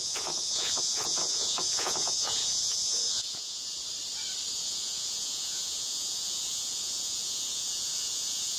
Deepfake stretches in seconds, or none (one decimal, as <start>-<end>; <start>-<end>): 0.0-3.8; 4.5-8.6